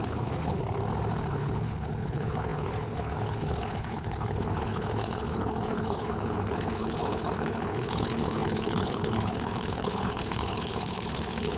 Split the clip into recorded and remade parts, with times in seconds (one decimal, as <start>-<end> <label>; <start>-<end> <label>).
0.0-0.6 remade; 0.6-1.3 recorded; 1.3-11.6 remade